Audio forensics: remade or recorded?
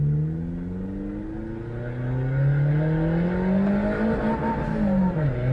recorded